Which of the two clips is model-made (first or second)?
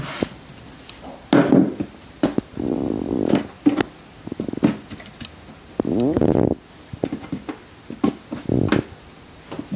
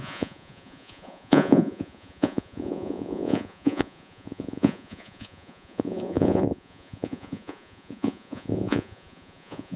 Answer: second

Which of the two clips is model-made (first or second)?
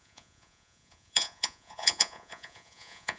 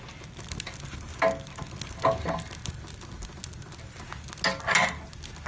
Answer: first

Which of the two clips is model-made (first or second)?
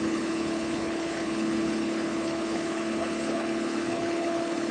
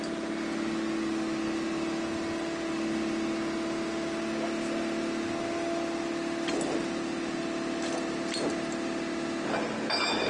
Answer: first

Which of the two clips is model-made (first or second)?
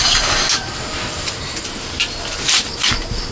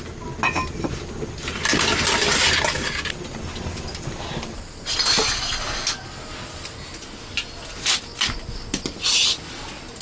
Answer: first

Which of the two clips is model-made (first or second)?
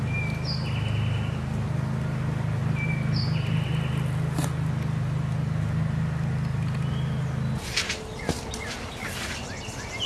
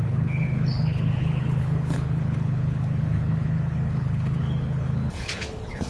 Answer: second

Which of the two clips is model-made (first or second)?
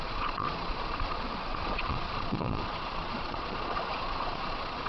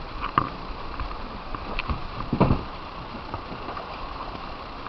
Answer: first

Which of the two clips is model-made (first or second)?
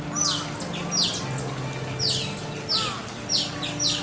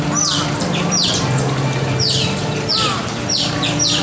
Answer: second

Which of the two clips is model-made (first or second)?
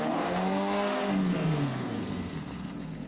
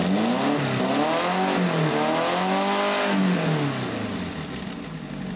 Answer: first